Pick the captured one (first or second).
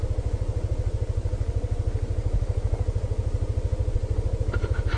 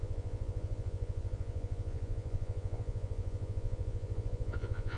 first